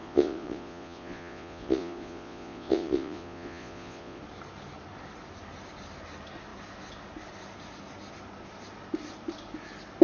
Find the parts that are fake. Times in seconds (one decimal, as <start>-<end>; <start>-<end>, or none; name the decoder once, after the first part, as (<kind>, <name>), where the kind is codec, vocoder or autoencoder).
0.0-4.2 (vocoder, Vocos)

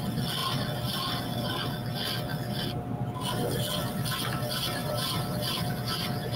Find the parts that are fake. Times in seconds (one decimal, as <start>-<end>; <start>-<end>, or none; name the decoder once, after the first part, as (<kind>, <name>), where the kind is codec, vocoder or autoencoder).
4.8-5.5 (vocoder, BigVGAN v2)

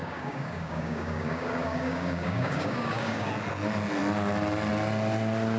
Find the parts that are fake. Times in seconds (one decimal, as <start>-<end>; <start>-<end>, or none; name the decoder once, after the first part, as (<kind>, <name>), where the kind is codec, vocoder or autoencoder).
0.0-3.3 (codec, DAC)

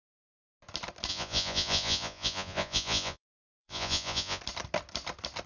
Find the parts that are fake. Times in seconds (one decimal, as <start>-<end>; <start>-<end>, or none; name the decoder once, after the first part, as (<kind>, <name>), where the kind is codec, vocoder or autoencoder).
1.1-4.4 (vocoder, Vocos)